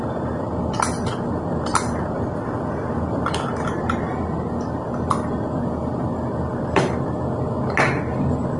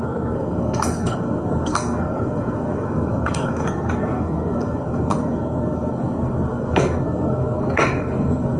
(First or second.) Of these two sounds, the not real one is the second